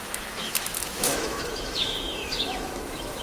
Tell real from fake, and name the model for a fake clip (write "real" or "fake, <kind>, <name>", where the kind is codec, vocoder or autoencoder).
fake, autoencoder, DAC-VAE